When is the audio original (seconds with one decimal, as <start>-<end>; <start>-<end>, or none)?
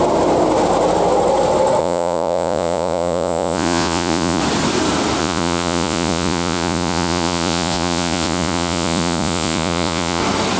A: 0.0-1.8; 4.4-5.2; 10.2-10.6